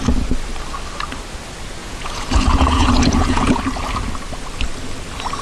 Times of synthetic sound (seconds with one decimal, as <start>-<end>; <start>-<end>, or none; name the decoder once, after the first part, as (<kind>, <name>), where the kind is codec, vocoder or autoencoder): 1.8-3.6 (vocoder, Vocos)